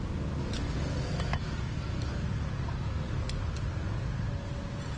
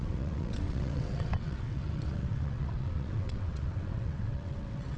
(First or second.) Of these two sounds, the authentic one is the first